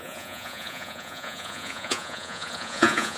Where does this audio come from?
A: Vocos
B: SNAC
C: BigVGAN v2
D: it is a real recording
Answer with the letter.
A